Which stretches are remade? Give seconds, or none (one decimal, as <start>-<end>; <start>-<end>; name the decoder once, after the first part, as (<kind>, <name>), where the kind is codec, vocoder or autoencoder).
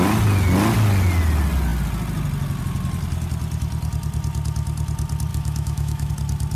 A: 5.3-6.1 (autoencoder, DAC-VAE)